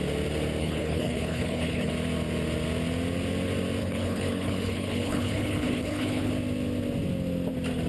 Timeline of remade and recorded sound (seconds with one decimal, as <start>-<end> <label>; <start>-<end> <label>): 0.0-0.6 recorded; 0.6-1.9 remade; 1.9-3.8 recorded; 3.8-6.3 remade; 6.3-7.9 recorded